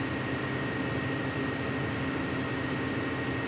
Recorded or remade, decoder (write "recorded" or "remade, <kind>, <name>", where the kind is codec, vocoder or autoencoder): recorded